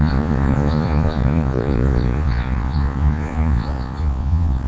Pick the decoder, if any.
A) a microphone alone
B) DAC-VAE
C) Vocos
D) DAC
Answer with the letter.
C